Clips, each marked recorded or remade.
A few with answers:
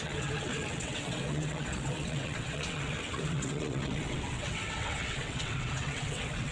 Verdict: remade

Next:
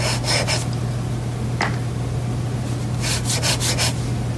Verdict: recorded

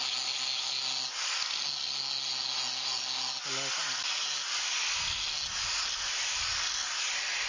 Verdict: recorded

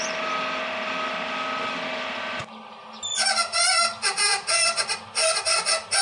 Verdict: recorded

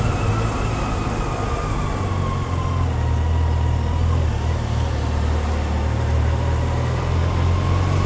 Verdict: recorded